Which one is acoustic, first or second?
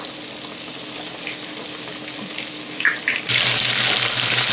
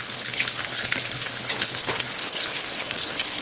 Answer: first